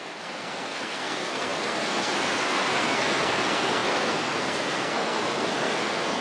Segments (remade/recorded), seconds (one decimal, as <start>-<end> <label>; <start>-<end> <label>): 0.0-6.2 remade